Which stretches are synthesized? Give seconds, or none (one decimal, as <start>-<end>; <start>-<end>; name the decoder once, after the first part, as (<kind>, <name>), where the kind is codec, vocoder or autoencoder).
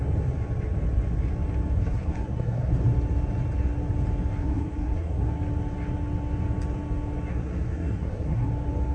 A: 1.8-2.7 (codec, SNAC); 4.4-5.3; 7.3-8.5